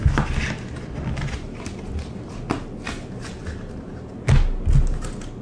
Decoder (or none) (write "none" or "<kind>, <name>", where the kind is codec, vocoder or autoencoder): none